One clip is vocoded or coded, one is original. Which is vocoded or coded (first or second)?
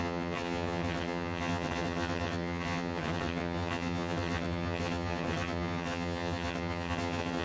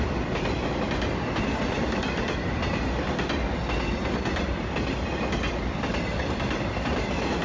first